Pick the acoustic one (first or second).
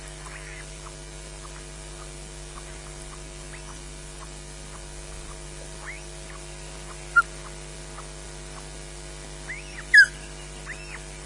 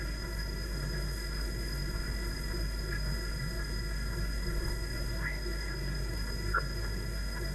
first